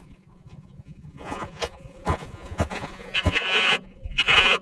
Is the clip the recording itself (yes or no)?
no